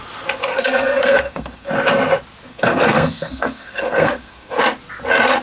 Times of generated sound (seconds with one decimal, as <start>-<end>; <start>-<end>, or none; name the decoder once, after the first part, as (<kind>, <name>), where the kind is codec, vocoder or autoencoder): 0.5-1.7 (codec, SNAC); 2.5-4.6